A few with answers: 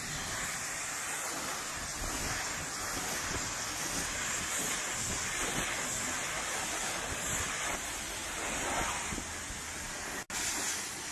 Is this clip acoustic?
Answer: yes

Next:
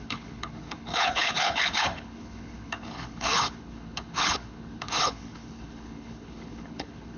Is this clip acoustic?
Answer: no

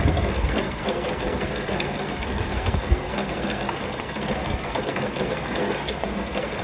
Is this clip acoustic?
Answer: no